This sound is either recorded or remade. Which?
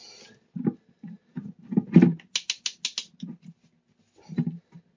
recorded